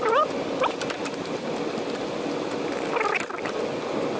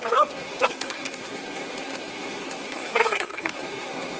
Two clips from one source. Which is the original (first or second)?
first